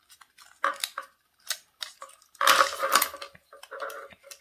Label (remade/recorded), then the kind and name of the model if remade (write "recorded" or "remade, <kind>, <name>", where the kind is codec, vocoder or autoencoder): recorded